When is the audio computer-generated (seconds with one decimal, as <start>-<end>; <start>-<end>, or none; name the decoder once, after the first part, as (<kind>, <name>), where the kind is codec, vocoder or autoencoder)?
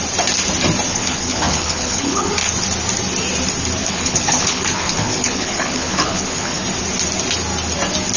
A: 0.9-2.3 (codec, HILCodec); 3.8-6.6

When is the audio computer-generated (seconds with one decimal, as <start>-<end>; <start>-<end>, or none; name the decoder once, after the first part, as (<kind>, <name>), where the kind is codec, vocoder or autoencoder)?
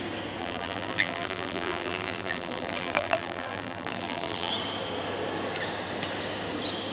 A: 0.4-4.5 (vocoder, BigVGAN v2)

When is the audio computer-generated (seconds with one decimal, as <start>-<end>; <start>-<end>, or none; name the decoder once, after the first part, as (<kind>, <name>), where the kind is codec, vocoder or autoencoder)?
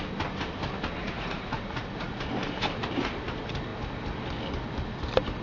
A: 1.0-2.1 (vocoder, Vocos)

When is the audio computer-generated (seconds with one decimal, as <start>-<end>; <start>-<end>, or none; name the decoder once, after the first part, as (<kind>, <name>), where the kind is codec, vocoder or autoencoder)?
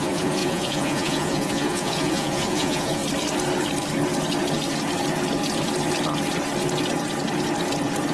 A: 0.0-3.0 (vocoder, Vocos)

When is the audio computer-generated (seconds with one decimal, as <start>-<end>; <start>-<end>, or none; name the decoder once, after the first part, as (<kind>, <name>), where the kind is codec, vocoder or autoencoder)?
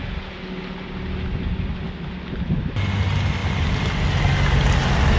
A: none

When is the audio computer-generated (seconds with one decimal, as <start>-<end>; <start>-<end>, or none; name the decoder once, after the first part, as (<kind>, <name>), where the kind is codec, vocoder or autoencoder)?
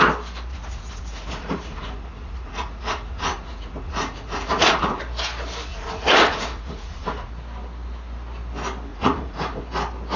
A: 0.5-5.0 (vocoder, Vocos); 5.7-7.3; 8.9-9.6